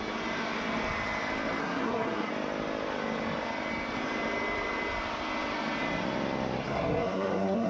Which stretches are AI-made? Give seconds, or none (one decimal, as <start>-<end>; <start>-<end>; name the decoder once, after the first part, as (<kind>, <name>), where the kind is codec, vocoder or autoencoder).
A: 1.6-2.3 (codec, SNAC); 6.6-7.7